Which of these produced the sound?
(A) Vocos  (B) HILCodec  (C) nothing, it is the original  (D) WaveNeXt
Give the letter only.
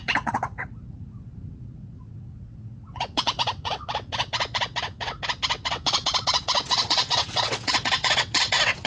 D